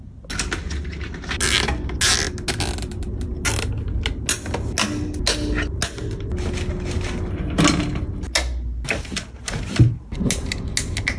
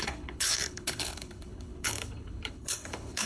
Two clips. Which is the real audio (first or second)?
first